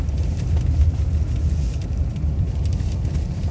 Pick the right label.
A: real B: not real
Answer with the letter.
A